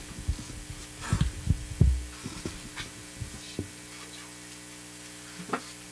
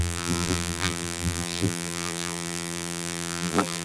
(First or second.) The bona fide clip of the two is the first